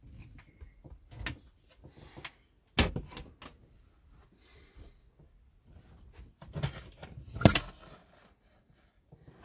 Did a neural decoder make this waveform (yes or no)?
no